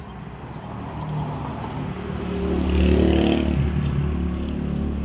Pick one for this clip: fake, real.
real